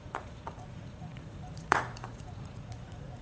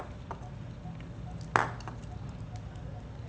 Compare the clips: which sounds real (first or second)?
second